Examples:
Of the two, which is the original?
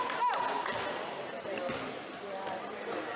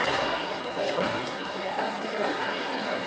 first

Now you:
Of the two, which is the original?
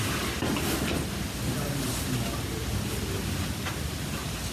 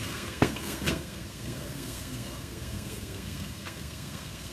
first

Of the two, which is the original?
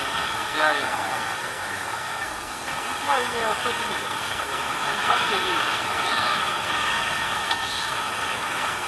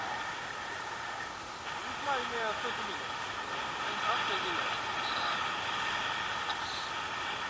second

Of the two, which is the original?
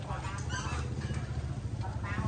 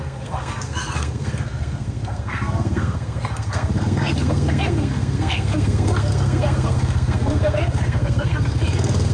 first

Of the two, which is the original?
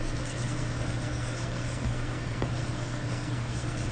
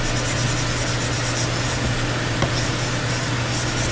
second